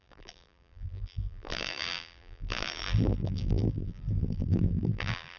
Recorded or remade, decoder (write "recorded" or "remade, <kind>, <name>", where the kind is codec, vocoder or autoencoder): remade, vocoder, BigVGAN v2